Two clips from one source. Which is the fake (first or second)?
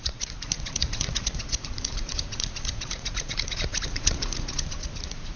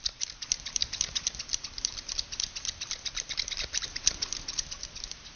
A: first